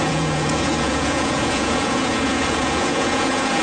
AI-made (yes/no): yes